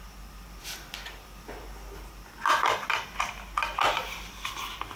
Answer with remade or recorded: recorded